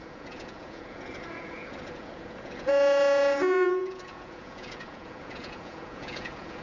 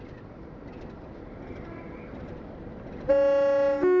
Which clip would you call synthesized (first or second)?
first